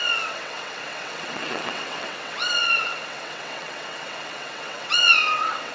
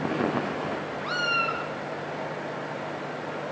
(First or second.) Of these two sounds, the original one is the second